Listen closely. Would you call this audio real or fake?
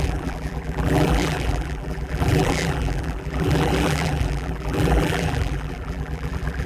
fake